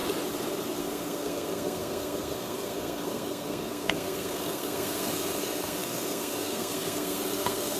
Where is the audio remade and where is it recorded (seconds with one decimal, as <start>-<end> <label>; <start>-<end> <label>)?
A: 0.0-0.8 recorded; 0.8-7.8 remade